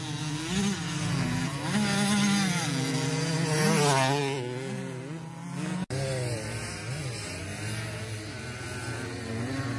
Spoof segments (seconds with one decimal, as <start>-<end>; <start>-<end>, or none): none